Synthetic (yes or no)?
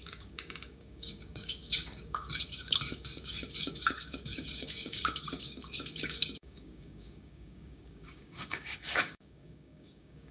yes